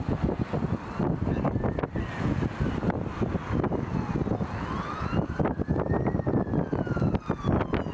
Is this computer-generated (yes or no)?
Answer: no